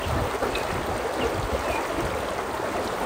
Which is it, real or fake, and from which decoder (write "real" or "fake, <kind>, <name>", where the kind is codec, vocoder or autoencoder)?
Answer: real